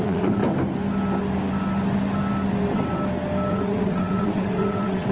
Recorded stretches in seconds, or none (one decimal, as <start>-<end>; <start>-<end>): 0.4-3.5